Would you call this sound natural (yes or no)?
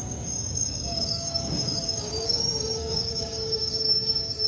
no